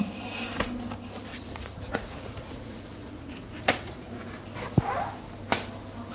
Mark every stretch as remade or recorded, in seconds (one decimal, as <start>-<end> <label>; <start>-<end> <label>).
0.0-1.3 recorded; 1.3-4.2 remade; 4.2-6.1 recorded